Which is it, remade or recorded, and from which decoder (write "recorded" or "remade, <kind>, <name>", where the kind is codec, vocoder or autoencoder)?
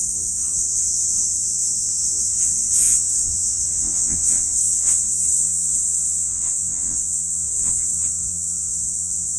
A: remade, vocoder, WaveNeXt